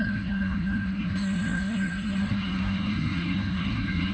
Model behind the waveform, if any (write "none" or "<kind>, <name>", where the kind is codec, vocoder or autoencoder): codec, SNAC